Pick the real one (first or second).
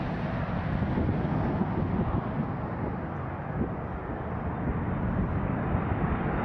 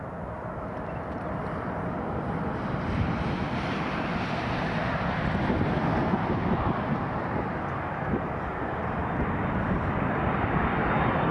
first